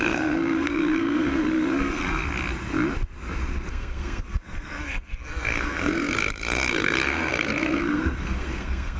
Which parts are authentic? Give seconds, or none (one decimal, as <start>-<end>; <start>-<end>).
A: 2.0-3.7